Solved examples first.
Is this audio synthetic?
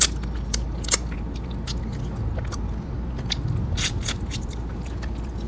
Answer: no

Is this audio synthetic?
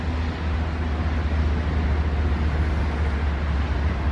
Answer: no